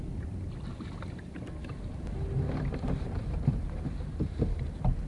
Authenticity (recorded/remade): recorded